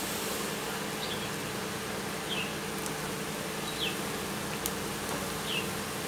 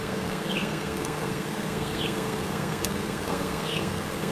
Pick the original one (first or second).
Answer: first